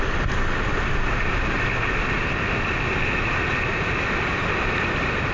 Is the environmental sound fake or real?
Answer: real